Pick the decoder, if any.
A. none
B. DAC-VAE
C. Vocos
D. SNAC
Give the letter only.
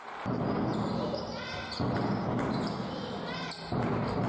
A